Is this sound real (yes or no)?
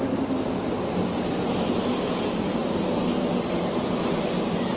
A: yes